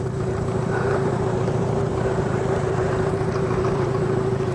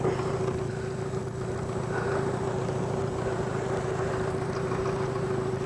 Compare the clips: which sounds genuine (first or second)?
second